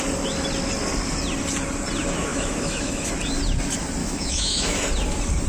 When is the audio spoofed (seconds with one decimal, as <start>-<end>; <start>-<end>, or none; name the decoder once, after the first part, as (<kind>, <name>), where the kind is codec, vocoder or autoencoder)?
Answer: 2.3-3.1 (autoencoder, DAC-VAE); 4.0-4.8